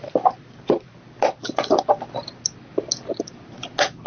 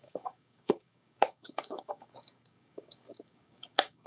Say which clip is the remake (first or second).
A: second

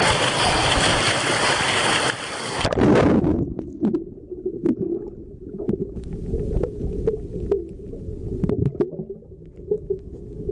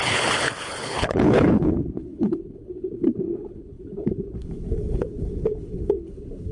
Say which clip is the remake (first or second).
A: second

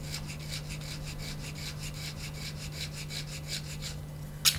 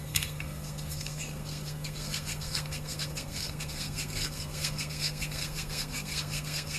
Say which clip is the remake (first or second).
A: second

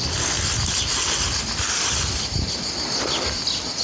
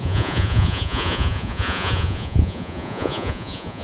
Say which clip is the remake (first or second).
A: second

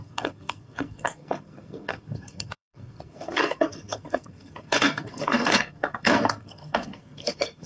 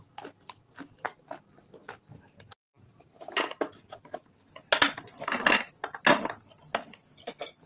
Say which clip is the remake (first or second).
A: first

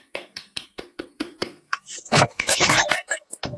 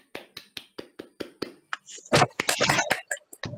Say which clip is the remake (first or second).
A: first